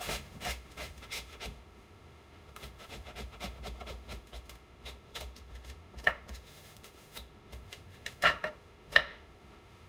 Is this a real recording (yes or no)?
no